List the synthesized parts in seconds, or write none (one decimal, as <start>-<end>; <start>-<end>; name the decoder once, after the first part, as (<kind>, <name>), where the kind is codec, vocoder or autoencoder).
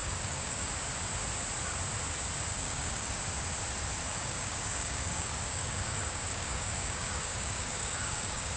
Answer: 0.0-0.7 (codec, DAC); 2.5-3.2; 4.1-8.6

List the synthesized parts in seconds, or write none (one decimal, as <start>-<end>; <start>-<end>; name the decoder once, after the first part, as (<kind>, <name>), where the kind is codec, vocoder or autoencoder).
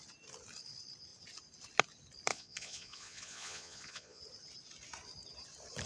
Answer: 2.3-4.2 (vocoder, Vocos)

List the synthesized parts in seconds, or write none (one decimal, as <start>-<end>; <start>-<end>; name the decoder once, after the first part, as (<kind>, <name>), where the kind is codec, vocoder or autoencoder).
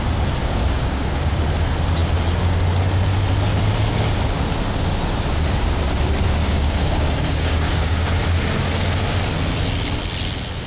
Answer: 0.4-1.4 (codec, DAC); 6.4-8.1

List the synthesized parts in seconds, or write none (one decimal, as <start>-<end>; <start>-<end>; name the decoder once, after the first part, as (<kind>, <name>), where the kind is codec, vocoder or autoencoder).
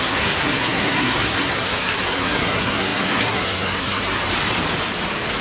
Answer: 0.0-4.2 (codec, SNAC)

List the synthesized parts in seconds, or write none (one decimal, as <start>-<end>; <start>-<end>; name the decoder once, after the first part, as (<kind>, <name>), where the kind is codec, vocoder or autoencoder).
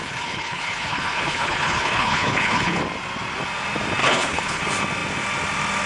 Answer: 0.0-2.8 (codec, HILCodec); 4.0-4.6